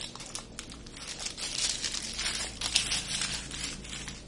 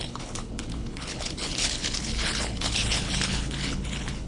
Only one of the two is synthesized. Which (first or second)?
second